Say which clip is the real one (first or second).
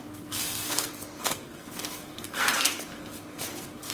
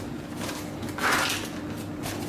second